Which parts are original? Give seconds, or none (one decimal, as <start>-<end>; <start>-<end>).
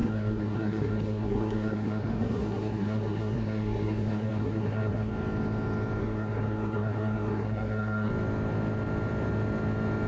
5.1-6.0; 8.1-10.1